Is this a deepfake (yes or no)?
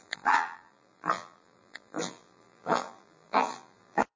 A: yes